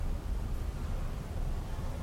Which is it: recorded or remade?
recorded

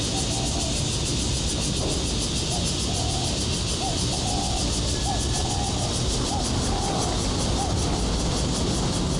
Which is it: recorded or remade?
recorded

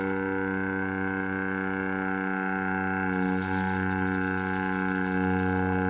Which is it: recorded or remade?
recorded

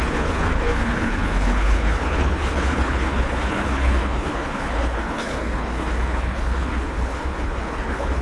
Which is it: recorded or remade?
remade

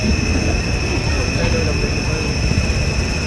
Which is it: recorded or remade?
recorded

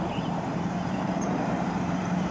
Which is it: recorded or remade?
remade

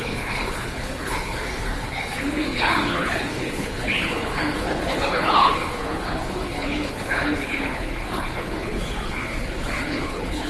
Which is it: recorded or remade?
remade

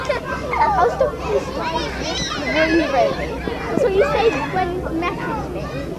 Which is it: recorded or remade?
recorded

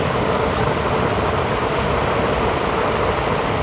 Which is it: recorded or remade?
recorded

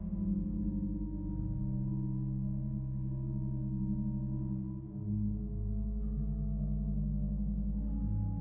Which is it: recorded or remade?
recorded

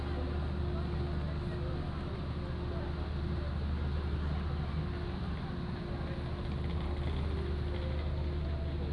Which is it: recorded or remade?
recorded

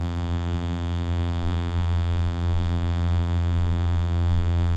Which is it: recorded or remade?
remade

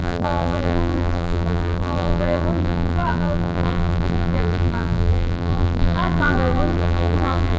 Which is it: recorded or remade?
remade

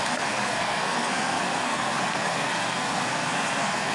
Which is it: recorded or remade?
remade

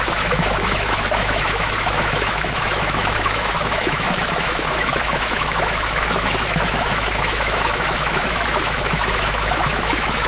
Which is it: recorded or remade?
remade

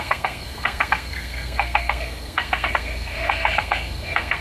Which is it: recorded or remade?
remade